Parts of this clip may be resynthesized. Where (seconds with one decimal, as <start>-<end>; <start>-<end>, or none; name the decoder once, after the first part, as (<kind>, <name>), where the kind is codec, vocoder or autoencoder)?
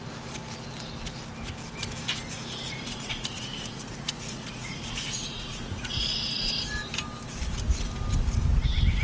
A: 2.9-6.5 (vocoder, Vocos)